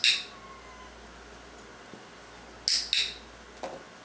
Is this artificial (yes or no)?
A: no